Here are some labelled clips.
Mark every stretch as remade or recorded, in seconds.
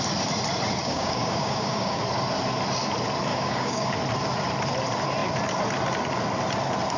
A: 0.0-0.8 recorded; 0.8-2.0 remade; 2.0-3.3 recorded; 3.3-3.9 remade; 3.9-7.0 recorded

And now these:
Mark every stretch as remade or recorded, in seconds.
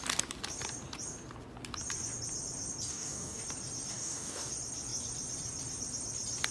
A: 0.0-2.9 recorded; 2.9-3.4 remade; 3.4-3.9 recorded; 3.9-4.5 remade; 4.5-6.5 recorded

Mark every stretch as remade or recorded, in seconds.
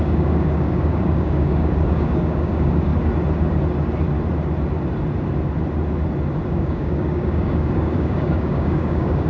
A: 0.0-2.9 remade; 2.9-6.5 recorded; 6.5-9.3 remade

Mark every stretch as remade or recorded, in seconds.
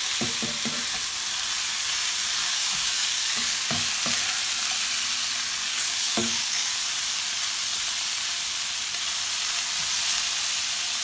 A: 0.0-2.4 recorded; 2.4-3.9 remade; 3.9-5.6 recorded; 5.6-6.8 remade; 6.8-11.0 recorded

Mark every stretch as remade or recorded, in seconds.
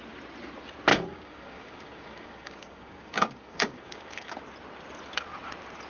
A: 0.0-0.9 recorded; 0.9-4.4 remade; 4.4-5.9 recorded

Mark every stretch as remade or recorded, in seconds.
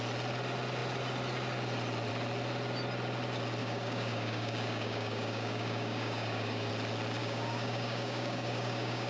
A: 0.0-3.6 recorded; 3.6-6.7 remade; 6.7-7.2 recorded; 7.2-9.1 remade